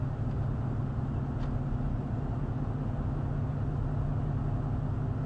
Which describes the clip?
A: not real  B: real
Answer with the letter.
B